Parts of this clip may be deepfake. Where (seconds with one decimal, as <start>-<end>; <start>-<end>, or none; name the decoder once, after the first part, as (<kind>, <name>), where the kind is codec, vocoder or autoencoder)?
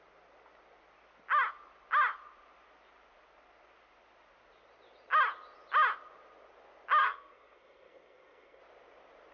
7.0-8.6 (codec, SNAC)